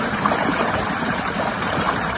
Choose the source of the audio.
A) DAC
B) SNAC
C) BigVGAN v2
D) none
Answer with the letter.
C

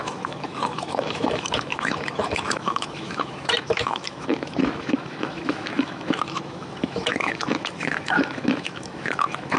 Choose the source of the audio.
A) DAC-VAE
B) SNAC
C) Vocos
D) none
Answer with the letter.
A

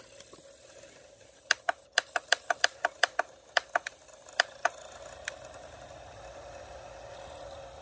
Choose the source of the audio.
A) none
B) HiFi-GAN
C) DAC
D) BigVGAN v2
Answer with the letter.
A